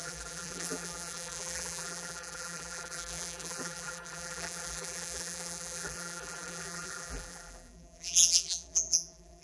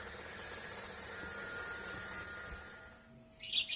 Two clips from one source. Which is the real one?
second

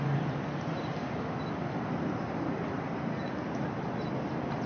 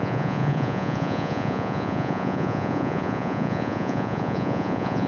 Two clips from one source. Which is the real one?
first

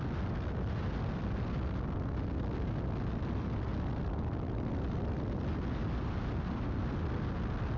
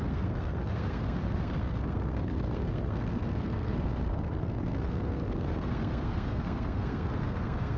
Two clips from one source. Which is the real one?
first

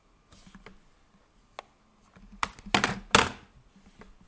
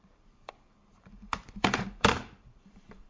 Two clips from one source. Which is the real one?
first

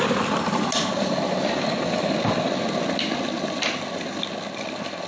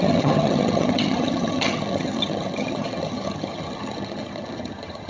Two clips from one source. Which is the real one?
first